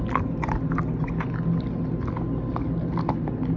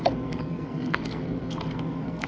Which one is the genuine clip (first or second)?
first